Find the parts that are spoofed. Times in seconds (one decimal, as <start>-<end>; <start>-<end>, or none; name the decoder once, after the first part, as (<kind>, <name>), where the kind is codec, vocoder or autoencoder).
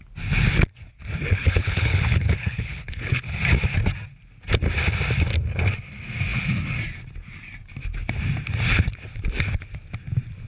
1.3-3.4 (codec, HILCodec)